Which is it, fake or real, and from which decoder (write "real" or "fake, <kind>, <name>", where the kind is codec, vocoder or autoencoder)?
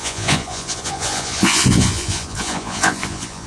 fake, vocoder, Vocos